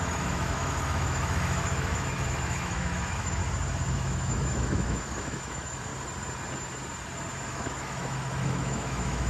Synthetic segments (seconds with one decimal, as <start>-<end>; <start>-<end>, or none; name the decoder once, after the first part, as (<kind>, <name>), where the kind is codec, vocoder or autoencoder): 0.0-3.4 (autoencoder, DAC-VAE); 3.9-5.9; 7.5-9.3